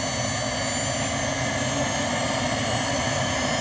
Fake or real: real